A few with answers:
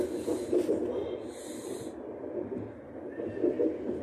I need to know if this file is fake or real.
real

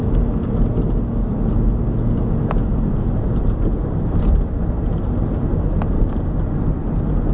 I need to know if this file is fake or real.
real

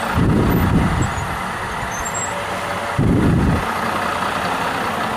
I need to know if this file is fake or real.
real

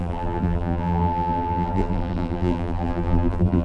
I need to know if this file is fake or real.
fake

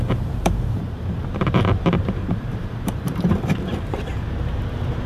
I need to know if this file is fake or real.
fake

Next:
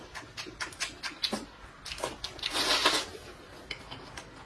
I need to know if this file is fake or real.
real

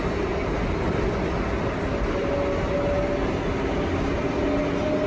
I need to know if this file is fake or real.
real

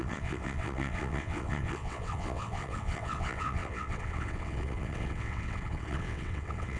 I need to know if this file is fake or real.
fake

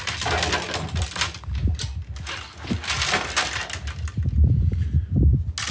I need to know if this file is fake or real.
real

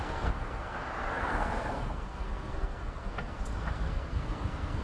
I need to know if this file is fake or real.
fake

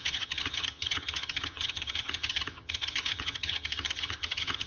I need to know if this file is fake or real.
fake